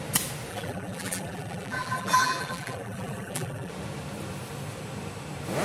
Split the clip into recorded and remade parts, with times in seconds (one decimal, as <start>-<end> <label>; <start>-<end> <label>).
0.0-0.5 recorded; 0.5-3.7 remade; 3.7-5.6 recorded